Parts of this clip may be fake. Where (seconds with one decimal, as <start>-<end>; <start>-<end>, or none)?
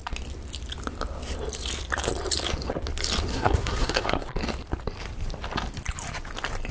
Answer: 3.3-4.3